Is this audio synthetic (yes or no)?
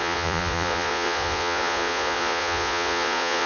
yes